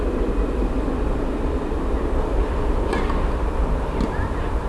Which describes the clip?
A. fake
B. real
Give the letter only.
B